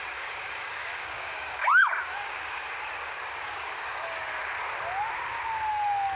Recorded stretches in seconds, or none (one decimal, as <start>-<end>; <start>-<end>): 4.4-5.7